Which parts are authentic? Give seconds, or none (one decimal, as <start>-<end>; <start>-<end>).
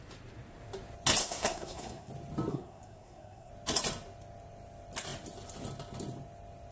0.0-1.2; 2.1-2.5; 3.5-6.7